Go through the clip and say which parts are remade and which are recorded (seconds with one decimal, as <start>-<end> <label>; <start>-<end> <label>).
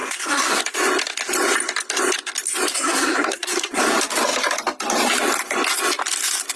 0.0-0.6 remade; 0.6-2.7 recorded; 2.7-3.8 remade; 3.8-6.6 recorded